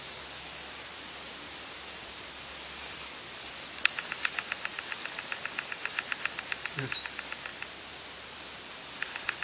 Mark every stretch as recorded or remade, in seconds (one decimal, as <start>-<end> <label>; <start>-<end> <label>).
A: 0.0-7.5 recorded; 7.5-8.4 remade; 8.4-9.4 recorded